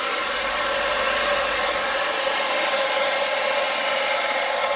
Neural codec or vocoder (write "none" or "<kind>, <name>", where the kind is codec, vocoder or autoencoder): none